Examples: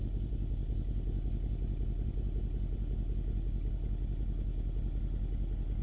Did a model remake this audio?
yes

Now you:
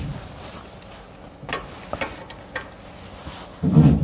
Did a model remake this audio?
no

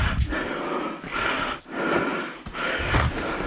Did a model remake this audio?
no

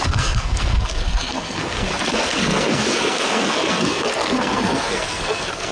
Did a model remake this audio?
yes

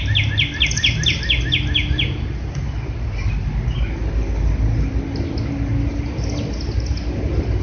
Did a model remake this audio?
no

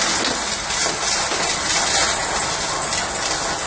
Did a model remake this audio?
no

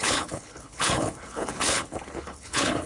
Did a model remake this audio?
yes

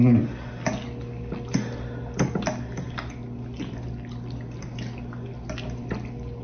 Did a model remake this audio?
no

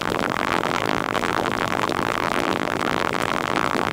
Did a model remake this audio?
yes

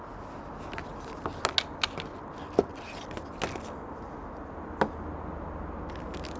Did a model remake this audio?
no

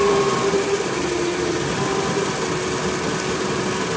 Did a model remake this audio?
no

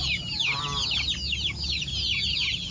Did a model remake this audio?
no